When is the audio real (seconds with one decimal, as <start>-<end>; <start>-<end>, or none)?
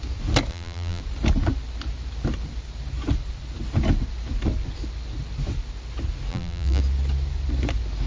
0.0-0.5; 1.0-6.3; 6.8-8.1